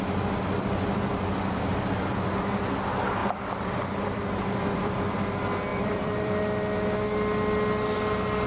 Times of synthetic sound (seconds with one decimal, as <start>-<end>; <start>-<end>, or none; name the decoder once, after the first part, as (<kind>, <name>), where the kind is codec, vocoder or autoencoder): 3.2-4.9 (vocoder, BigVGAN v2); 5.7-6.4